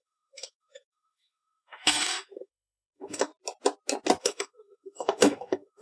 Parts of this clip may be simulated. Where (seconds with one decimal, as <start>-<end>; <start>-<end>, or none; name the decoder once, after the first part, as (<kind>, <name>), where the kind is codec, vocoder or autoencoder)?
0.0-3.3 (autoencoder, DAC-VAE); 4.2-5.8